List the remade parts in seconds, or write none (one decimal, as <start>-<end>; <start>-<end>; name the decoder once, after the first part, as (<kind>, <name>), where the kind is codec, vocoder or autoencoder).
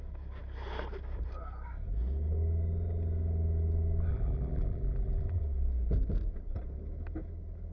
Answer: 4.1-5.4 (vocoder, BigVGAN v2)